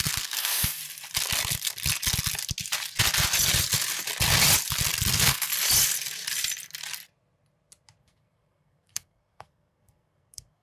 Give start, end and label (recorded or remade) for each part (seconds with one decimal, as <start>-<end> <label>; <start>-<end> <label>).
0.0-0.8 remade; 0.8-5.1 recorded; 5.1-5.5 remade; 5.5-8.0 recorded; 8.0-10.6 remade